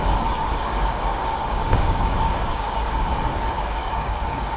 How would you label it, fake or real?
fake